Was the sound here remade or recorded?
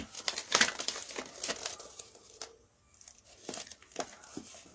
recorded